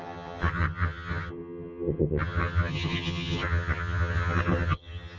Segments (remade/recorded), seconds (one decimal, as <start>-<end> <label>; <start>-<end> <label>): 0.0-5.2 remade